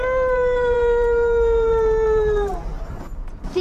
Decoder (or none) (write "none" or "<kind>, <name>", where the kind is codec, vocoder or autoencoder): vocoder, BigVGAN v2